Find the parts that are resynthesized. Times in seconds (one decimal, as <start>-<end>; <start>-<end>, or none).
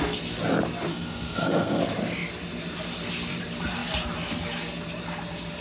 0.9-1.8